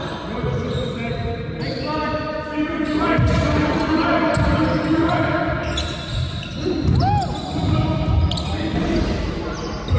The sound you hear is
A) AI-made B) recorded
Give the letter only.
B